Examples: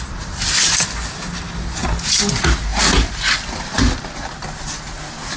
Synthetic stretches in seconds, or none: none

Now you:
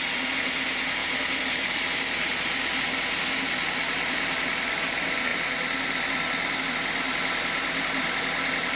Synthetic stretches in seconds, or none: none

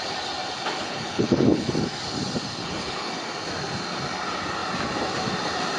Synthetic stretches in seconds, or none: 0.8-1.7 (codec, HILCodec); 2.5-3.1